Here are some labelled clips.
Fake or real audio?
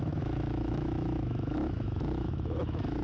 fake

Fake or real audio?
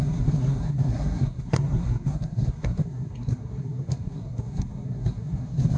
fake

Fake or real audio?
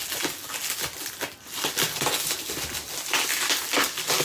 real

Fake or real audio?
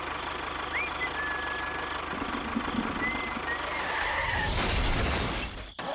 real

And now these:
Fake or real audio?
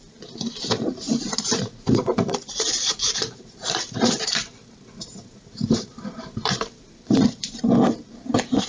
fake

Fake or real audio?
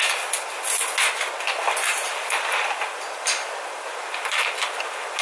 real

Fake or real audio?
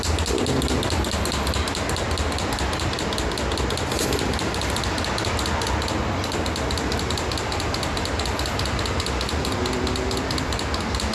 real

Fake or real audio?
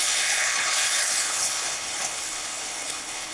fake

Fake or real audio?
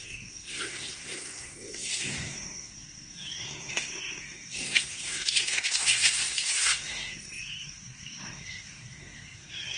fake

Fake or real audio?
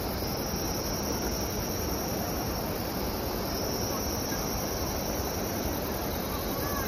real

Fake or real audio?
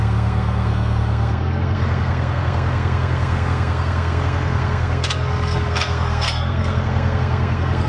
fake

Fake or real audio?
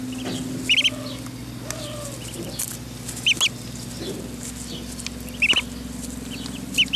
real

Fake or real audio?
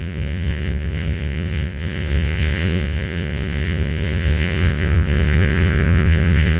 fake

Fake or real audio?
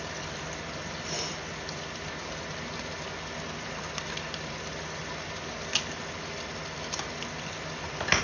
real